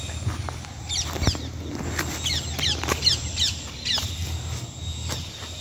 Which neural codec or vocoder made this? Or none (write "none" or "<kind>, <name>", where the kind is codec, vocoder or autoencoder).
none